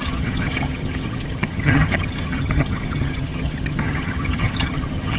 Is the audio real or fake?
fake